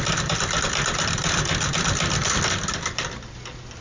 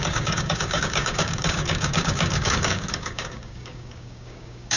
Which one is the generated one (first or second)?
second